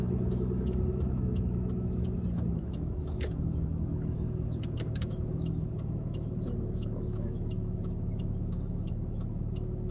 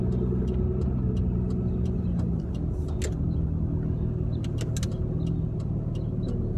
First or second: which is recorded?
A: second